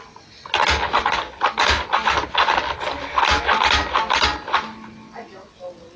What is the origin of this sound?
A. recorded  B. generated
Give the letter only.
A